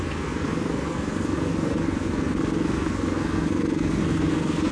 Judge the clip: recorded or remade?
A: remade